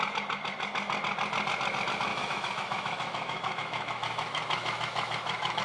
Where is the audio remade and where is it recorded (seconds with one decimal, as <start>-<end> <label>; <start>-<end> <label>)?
0.0-2.1 recorded; 2.1-5.6 remade